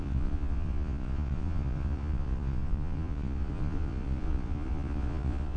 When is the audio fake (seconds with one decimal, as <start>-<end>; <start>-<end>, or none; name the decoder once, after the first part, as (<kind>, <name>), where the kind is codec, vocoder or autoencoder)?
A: 0.0-5.6 (vocoder, Vocos)